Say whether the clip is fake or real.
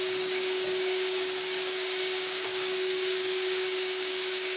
fake